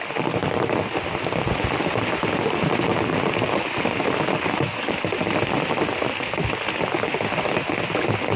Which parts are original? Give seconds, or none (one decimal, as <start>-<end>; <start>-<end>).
0.0-8.4